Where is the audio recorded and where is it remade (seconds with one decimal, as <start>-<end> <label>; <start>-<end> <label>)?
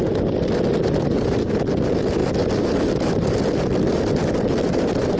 0.0-5.2 recorded